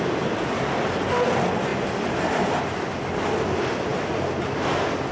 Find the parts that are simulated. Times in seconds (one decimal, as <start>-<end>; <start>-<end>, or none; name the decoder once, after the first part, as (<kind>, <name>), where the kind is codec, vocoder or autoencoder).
none